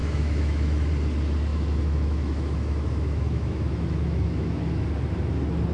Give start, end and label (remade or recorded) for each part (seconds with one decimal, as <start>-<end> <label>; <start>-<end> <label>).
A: 0.0-0.9 remade; 0.9-1.5 recorded; 1.5-4.9 remade; 4.9-5.7 recorded